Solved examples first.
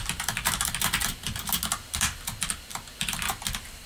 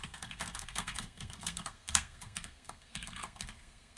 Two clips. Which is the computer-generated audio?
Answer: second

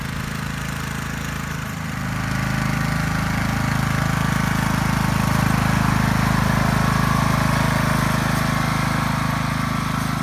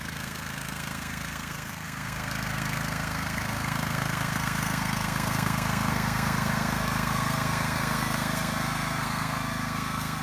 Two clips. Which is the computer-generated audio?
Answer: second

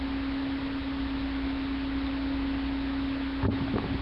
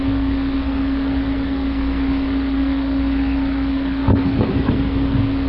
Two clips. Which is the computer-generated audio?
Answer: second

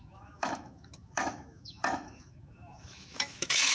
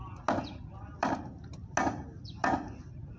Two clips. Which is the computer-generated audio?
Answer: first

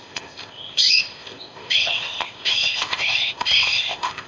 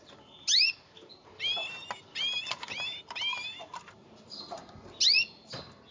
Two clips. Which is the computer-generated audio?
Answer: first